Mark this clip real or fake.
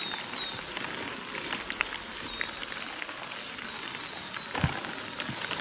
real